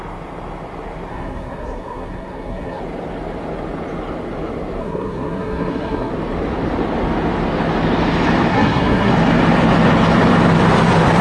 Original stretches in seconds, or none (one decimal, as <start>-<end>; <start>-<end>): 0.0-1.1; 2.8-4.8; 6.1-8.5; 9.1-11.2

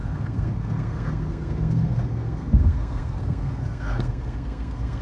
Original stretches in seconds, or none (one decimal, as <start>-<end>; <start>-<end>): none

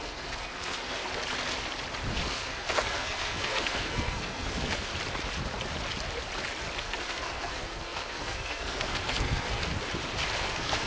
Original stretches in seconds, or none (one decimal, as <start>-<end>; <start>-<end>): 1.0-2.1; 4.9-6.8; 9.7-10.4